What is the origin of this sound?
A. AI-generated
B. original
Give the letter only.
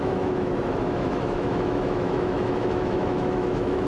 A